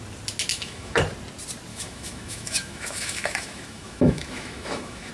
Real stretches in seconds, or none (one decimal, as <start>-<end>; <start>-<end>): 0.0-0.5; 1.0-1.7